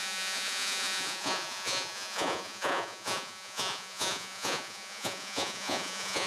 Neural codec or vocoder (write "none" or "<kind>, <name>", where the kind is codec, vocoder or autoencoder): vocoder, Vocos